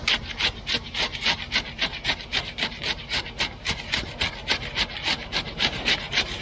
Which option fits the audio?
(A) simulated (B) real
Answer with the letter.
A